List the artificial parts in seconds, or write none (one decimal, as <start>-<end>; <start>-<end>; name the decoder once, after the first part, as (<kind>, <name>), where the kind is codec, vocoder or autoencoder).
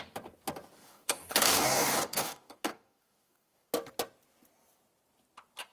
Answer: 0.8-3.7 (codec, DAC)